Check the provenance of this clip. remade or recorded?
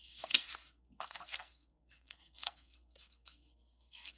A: remade